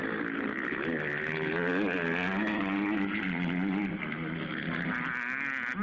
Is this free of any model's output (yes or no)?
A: yes